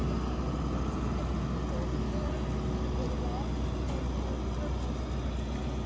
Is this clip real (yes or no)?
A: yes